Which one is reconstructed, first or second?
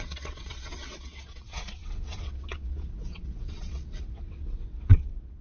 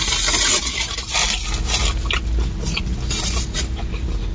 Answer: first